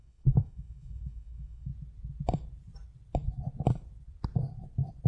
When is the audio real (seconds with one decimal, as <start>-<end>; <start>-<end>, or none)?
1.7-5.1